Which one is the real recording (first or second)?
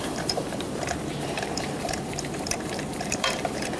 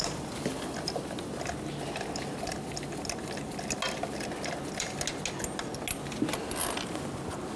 second